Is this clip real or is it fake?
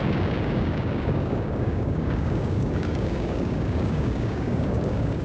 fake